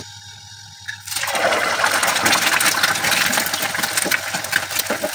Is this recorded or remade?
recorded